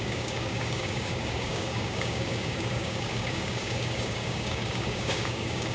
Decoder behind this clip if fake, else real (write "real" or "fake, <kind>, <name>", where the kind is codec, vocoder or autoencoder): fake, codec, DAC